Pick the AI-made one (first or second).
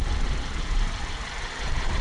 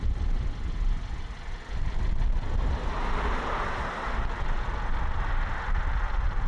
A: first